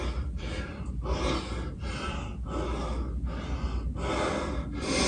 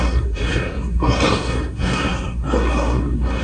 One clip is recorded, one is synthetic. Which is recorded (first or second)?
first